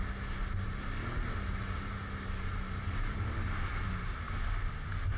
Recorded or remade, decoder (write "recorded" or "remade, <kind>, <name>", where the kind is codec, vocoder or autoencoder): recorded